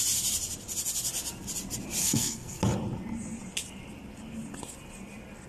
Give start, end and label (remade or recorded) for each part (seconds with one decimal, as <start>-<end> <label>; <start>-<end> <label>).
0.0-2.0 recorded; 2.0-2.6 remade; 2.6-5.5 recorded